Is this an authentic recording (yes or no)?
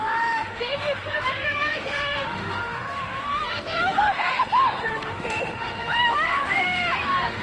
no